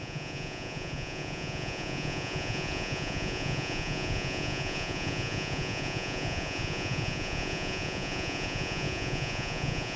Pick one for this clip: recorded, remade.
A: remade